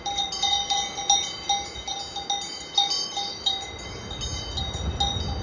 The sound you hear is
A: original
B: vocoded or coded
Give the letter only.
A